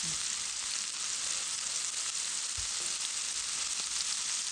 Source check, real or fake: real